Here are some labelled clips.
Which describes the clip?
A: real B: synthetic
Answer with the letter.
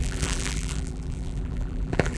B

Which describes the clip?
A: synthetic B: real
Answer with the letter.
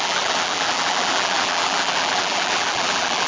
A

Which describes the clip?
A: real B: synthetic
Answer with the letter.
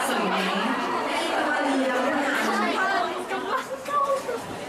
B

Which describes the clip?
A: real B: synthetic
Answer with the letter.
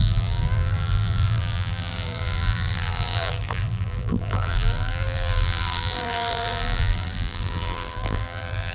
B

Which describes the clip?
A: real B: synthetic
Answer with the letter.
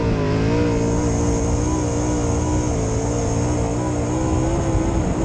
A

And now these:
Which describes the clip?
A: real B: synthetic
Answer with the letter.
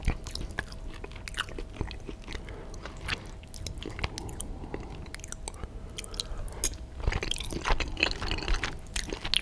A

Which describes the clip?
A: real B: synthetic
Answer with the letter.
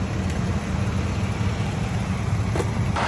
B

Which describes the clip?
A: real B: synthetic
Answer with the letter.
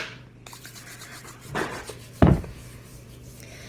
B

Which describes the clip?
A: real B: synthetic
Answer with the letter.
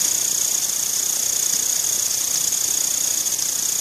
A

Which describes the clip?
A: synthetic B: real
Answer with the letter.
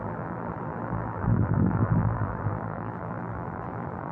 A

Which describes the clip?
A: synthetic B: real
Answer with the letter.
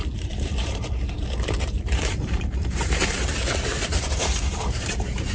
A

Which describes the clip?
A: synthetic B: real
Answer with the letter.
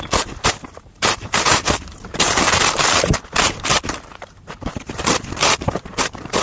A